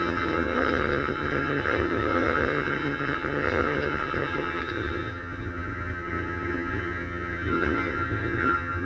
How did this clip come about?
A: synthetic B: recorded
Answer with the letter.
A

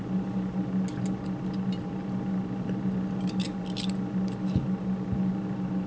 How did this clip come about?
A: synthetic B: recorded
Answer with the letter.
B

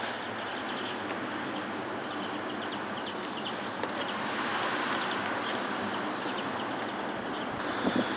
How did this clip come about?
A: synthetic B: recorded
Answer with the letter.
B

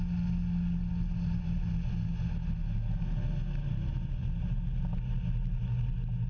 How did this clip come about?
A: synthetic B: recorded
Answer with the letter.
B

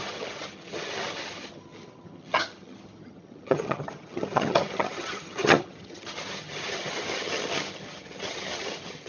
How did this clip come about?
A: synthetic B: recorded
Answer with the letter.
A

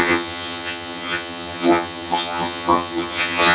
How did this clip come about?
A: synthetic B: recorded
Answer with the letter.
A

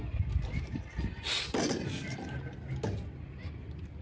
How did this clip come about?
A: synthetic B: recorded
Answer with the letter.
B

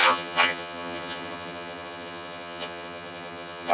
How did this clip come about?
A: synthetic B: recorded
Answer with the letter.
A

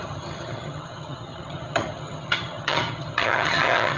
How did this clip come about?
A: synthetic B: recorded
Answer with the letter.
A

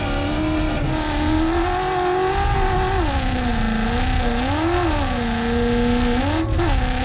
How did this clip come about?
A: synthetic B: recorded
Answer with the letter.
B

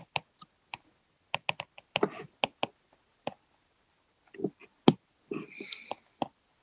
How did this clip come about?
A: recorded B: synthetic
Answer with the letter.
A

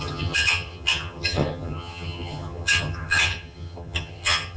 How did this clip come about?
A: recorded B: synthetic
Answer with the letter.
B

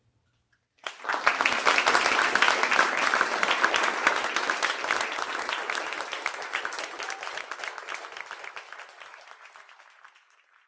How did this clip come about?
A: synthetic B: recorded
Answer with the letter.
B